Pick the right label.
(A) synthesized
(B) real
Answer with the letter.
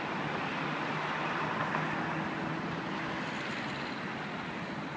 B